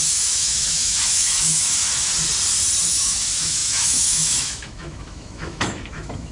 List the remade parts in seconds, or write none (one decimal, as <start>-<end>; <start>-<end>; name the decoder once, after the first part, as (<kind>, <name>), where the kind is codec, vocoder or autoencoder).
0.0-2.1 (autoencoder, DAC-VAE); 2.8-6.3

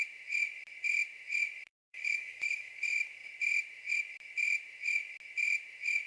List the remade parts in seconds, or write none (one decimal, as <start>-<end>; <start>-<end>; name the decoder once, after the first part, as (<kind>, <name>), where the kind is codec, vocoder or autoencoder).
1.7-2.7 (autoencoder, DAC-VAE)

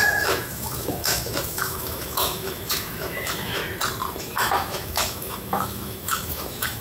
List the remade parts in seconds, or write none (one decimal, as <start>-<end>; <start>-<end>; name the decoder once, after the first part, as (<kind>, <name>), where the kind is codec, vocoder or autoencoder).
0.0-3.6 (autoencoder, DAC-VAE); 4.2-6.8

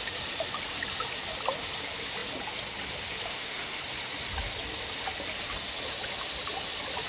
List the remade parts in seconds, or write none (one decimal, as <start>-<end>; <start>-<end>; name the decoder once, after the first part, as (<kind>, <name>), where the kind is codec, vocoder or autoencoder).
3.3-3.8 (autoencoder, DAC-VAE)

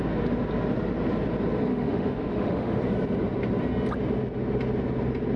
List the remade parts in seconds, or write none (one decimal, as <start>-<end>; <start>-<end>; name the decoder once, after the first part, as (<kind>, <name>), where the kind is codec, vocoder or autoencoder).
1.7-2.8 (autoencoder, DAC-VAE)

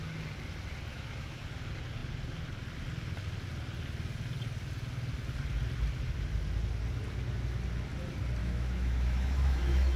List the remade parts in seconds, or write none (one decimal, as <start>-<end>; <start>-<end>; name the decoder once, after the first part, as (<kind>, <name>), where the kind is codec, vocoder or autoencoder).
0.9-1.4 (autoencoder, DAC-VAE); 8.4-10.0